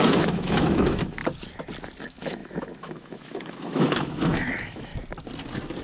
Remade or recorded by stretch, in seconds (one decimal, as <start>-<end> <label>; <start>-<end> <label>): 0.0-1.2 remade; 1.2-2.0 recorded; 2.0-4.9 remade; 4.9-5.8 recorded